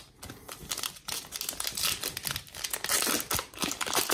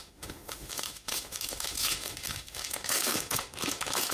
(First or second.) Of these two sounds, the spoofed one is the second